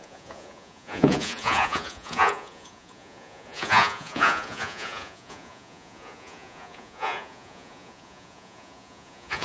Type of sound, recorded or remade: remade